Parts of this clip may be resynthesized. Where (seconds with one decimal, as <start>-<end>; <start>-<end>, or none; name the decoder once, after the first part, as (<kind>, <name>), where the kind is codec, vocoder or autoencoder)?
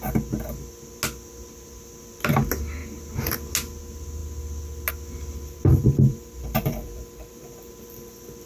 5.7-7.7 (vocoder, BigVGAN v2)